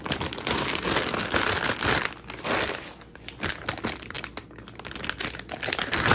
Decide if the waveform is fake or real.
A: real